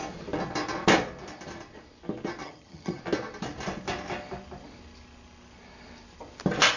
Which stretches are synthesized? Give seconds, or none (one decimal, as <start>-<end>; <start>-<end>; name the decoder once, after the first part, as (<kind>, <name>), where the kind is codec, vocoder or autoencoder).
2.4-3.0 (vocoder, HiFi-GAN)

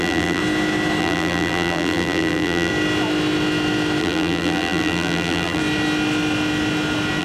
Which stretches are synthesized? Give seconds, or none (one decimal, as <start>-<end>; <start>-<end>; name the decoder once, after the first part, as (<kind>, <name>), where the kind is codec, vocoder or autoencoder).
0.0-0.4 (vocoder, BigVGAN v2); 1.0-2.7; 4.0-5.6